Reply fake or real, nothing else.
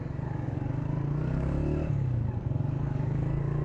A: fake